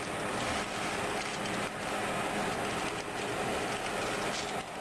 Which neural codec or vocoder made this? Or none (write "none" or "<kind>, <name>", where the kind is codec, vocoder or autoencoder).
none